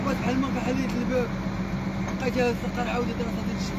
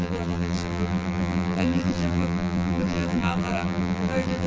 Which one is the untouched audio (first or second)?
first